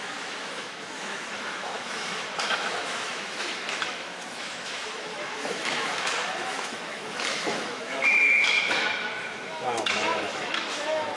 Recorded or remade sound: remade